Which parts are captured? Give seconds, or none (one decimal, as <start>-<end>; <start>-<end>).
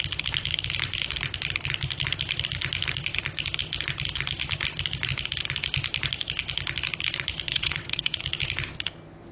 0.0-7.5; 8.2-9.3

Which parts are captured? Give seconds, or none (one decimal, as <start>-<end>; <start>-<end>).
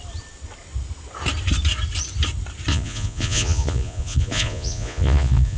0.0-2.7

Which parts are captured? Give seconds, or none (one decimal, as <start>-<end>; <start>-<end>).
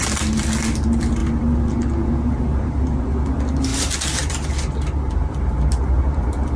0.0-6.6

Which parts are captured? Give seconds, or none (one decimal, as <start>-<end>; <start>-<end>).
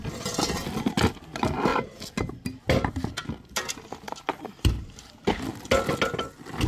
0.0-6.7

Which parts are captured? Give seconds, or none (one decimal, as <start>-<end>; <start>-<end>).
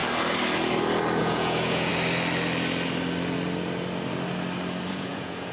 0.0-1.2; 1.9-4.9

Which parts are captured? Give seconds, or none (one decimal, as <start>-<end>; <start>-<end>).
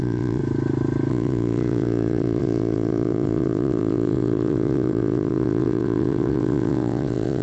0.4-1.1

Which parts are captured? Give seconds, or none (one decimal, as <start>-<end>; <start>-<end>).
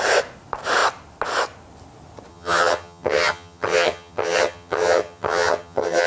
0.0-2.3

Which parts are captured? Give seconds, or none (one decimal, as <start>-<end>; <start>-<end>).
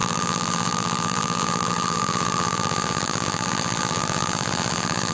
none